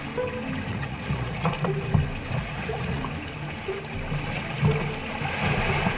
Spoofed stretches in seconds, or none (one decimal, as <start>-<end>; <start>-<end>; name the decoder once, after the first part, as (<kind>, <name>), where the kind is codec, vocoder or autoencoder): 0.7-1.5 (vocoder, Vocos); 2.4-3.0